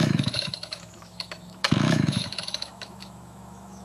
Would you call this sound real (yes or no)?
no